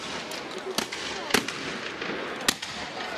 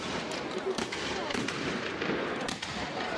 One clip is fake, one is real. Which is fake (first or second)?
second